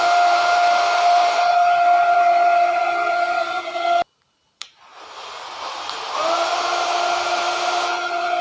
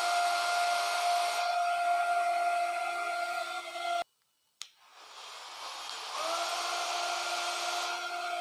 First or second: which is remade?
first